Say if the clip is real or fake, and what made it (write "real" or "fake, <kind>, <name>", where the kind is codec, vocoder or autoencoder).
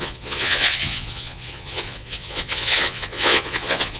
fake, vocoder, Vocos